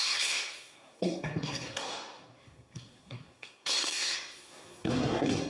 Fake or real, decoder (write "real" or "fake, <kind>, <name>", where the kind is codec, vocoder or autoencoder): fake, codec, SNAC